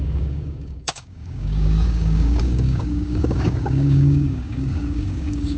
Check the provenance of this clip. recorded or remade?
remade